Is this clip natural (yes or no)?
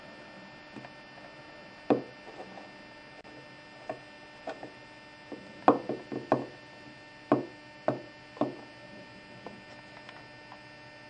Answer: yes